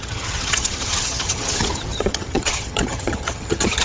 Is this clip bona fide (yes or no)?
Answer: no